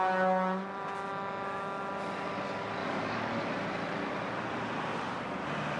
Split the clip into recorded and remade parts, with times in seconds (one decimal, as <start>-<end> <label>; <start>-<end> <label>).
0.0-2.8 recorded; 2.8-3.4 remade; 3.4-5.8 recorded